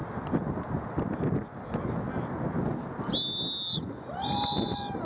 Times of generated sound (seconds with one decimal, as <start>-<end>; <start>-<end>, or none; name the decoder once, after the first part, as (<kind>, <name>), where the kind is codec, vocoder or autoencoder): 3.7-5.0 (vocoder, Vocos)